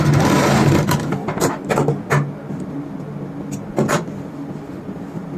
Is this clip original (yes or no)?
yes